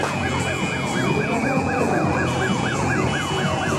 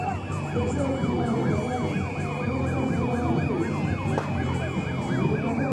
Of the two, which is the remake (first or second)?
first